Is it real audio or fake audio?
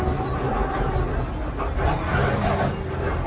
real